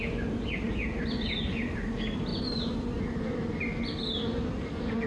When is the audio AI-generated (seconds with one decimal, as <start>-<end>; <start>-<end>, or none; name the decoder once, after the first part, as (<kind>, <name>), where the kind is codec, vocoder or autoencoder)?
2.3-3.0 (vocoder, BigVGAN v2)